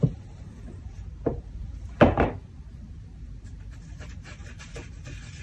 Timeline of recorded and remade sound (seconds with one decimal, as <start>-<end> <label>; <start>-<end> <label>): 0.0-4.4 remade; 4.4-5.0 recorded; 5.0-5.4 remade

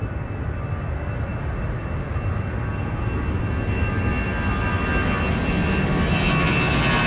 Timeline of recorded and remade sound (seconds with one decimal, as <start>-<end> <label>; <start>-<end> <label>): 0.0-7.1 recorded

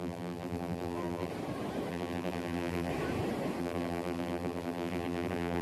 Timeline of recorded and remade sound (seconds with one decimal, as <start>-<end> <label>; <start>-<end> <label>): 0.0-1.3 remade; 1.3-1.9 recorded; 1.9-2.9 remade; 2.9-3.6 recorded; 3.6-5.6 remade

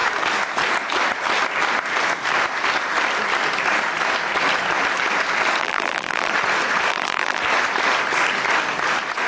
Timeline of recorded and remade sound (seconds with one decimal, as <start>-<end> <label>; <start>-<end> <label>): 0.0-5.6 recorded; 5.6-6.3 remade; 6.3-6.9 recorded; 6.9-7.4 remade; 7.4-9.3 recorded